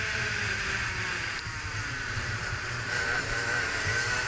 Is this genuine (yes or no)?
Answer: no